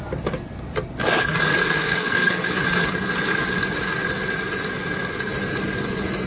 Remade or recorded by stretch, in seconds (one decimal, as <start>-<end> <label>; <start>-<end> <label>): 0.0-1.6 recorded; 1.6-2.6 remade; 2.6-6.3 recorded